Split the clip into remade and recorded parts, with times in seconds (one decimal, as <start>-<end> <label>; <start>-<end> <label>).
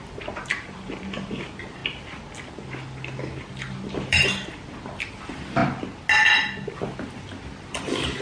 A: 0.0-1.8 remade; 1.8-2.5 recorded; 2.5-5.6 remade; 5.6-7.4 recorded; 7.4-8.2 remade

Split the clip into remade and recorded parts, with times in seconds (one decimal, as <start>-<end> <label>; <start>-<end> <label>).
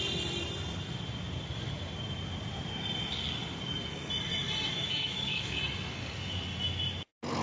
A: 0.0-4.7 recorded; 4.7-5.6 remade; 5.6-7.4 recorded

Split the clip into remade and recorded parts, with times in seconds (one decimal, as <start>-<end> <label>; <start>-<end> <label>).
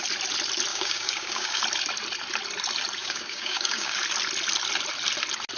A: 0.0-0.7 recorded; 0.7-1.6 remade; 1.6-3.0 recorded; 3.0-4.0 remade; 4.0-5.6 recorded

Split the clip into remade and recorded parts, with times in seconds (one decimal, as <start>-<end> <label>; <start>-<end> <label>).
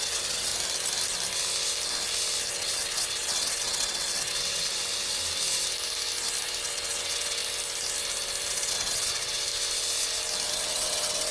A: 0.0-0.5 remade; 0.5-2.5 recorded; 2.5-4.9 remade; 4.9-6.6 recorded; 6.6-7.4 remade; 7.4-8.5 recorded; 8.5-9.5 remade; 9.5-10.5 recorded; 10.5-11.3 remade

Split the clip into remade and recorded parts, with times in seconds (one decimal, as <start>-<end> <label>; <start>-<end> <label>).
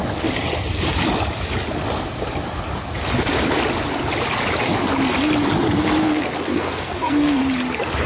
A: 0.0-6.0 recorded; 6.0-7.4 remade; 7.4-8.1 recorded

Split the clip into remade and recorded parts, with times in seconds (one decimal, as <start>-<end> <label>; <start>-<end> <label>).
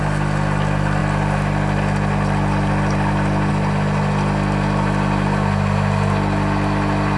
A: 0.0-7.2 recorded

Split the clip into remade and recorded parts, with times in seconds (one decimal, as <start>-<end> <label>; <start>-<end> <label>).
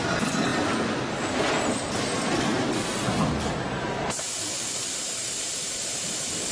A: 0.0-6.5 recorded